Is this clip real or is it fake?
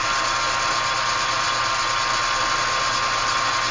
real